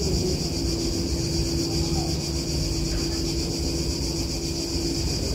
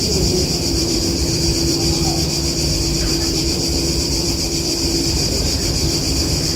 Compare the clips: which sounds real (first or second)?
first